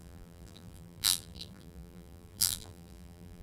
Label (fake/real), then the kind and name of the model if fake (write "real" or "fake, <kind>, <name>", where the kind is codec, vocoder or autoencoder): fake, vocoder, BigVGAN v2